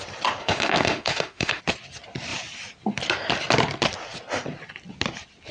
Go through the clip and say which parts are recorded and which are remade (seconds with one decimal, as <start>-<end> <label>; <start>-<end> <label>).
0.0-0.4 recorded; 0.4-1.6 remade; 1.6-5.5 recorded